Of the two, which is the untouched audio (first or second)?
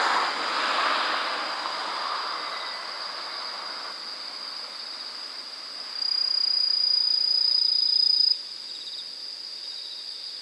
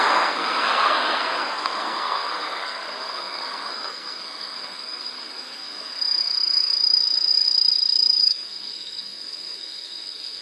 first